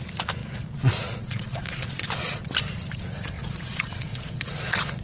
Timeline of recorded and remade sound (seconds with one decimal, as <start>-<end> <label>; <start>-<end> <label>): 0.0-0.4 recorded; 0.4-2.4 remade; 2.4-3.4 recorded; 3.4-5.0 remade